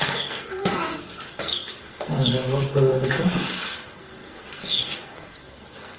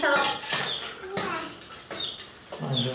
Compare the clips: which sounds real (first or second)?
second